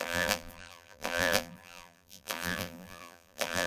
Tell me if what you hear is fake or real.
fake